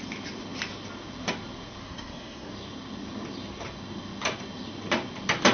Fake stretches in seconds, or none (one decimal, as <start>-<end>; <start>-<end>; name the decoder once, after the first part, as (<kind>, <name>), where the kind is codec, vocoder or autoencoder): 1.8-2.5 (codec, SNAC)